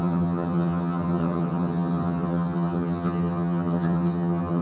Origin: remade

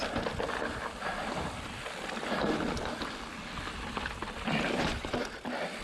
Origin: recorded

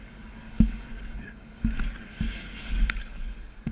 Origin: remade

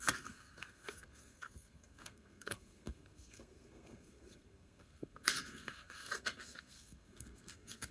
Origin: remade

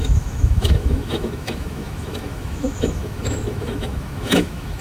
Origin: remade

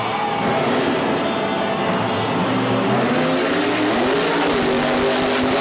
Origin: recorded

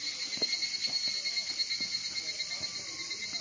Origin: recorded